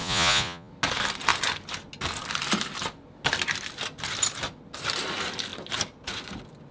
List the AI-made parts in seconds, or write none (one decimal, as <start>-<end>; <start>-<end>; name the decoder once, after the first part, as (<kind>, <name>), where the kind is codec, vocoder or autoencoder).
0.0-0.7 (vocoder, Vocos)